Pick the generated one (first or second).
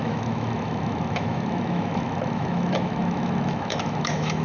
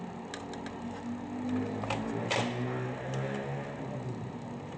first